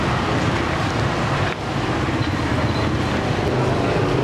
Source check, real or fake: real